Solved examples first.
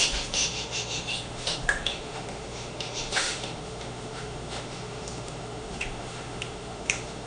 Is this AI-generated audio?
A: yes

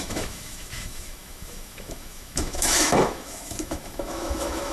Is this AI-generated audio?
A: yes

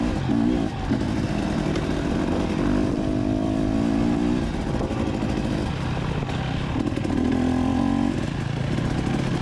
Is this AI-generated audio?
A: no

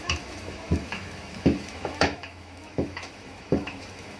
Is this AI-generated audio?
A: yes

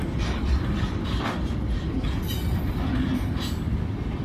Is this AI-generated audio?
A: no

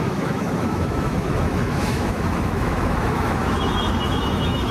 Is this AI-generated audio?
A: yes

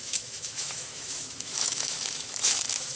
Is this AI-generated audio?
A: yes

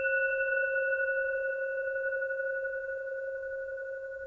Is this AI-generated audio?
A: yes